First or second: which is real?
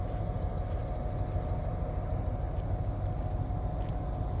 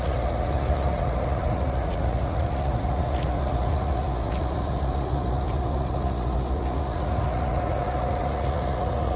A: first